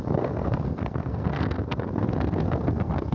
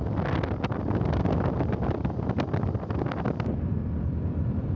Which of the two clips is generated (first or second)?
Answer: first